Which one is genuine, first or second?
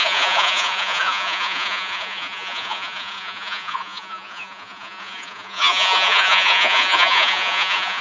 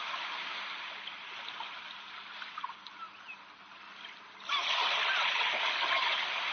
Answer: second